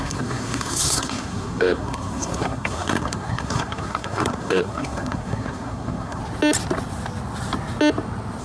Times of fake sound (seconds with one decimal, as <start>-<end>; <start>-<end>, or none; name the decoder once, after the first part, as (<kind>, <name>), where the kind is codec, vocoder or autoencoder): 0.0-6.2 (codec, SNAC)